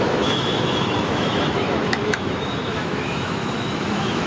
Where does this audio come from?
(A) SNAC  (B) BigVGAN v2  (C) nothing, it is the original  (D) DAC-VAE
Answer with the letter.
D